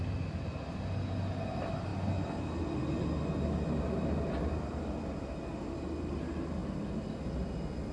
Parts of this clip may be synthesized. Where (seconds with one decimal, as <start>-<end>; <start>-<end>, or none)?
none